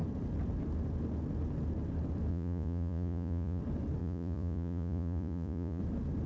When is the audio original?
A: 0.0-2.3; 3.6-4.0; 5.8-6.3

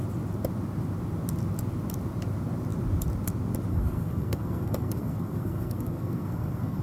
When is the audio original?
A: 0.0-3.7

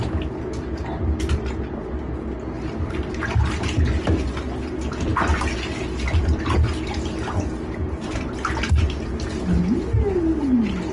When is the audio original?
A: 0.0-10.9

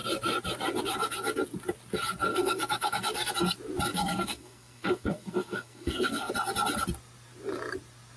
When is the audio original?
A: 0.0-2.3; 3.3-3.9; 6.3-8.2